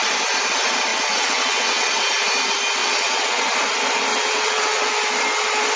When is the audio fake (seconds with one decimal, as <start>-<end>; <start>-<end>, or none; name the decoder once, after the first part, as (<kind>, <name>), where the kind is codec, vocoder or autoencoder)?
0.9-1.9 (vocoder, WaveNeXt); 2.8-3.4; 4.1-4.9